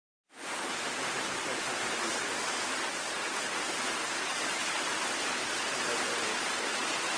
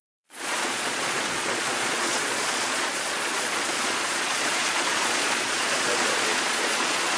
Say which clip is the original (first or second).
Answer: first